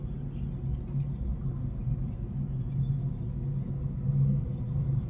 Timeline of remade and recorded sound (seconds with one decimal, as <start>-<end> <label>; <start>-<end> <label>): 0.0-1.3 recorded; 1.3-3.0 remade; 3.0-4.5 recorded; 4.5-5.1 remade